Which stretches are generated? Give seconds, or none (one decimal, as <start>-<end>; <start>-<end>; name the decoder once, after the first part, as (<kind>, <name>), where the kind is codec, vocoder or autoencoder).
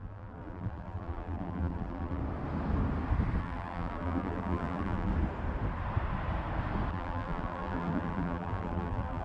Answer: 0.0-2.2 (vocoder, BigVGAN v2); 3.4-5.1; 6.9-9.2